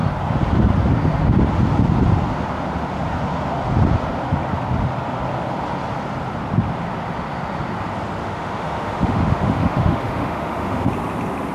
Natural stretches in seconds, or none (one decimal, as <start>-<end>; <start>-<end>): 0.0-8.2; 10.9-11.5